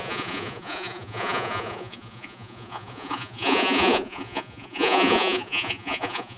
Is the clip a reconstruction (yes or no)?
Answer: yes